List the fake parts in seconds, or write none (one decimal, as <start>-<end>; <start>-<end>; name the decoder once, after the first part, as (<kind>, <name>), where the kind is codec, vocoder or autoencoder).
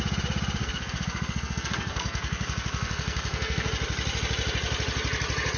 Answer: 0.6-3.7 (codec, SNAC)